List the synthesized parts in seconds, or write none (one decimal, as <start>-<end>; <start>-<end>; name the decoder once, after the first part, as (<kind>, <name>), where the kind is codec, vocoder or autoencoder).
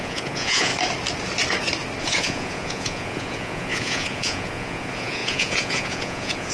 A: 0.0-0.7 (vocoder, Vocos); 2.0-6.5